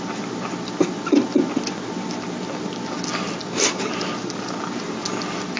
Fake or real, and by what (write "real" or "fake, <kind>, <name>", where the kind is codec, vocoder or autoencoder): real